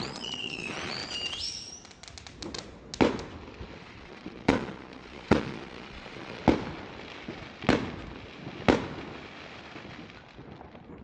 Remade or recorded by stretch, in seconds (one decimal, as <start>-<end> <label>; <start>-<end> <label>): 0.0-1.0 remade; 1.0-3.8 recorded; 3.8-6.4 remade; 6.4-11.0 recorded